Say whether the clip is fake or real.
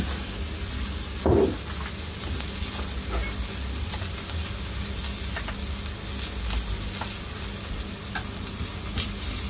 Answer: real